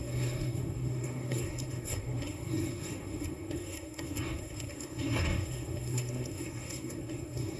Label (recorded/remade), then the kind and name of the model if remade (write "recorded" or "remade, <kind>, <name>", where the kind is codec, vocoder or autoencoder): remade, codec, SNAC